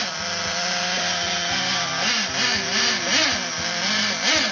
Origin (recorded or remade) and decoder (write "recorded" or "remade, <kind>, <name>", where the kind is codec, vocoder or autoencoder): recorded